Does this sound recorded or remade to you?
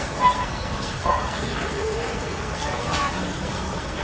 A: remade